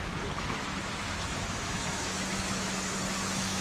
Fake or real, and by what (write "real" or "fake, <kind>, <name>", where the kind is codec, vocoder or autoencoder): fake, autoencoder, DAC-VAE